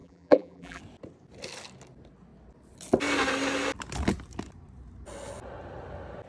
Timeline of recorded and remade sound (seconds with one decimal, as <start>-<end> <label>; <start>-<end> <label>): 0.0-0.8 remade; 0.8-6.3 recorded